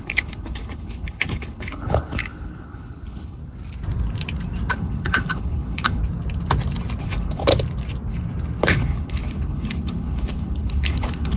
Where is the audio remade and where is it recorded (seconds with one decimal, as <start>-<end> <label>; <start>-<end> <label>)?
0.0-3.4 remade; 3.4-4.7 recorded; 4.7-6.0 remade; 6.0-7.0 recorded; 7.0-7.5 remade; 7.5-8.6 recorded; 8.6-11.4 remade